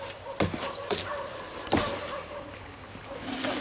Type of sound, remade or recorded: recorded